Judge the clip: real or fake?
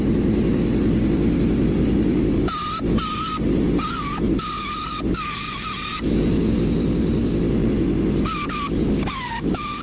real